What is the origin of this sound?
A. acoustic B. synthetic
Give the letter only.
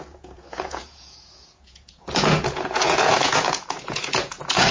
B